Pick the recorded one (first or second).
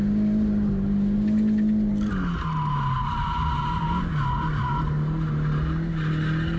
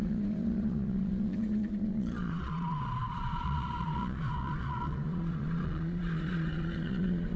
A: first